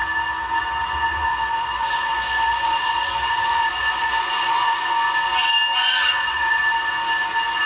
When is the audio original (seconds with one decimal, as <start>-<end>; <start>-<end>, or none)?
0.0-1.1; 4.9-5.8; 6.6-7.7